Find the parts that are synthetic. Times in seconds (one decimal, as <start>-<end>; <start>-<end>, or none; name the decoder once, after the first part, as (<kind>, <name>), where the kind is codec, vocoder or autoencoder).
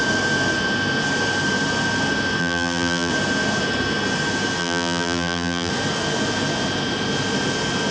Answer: 2.4-3.1 (vocoder, BigVGAN v2); 4.6-5.7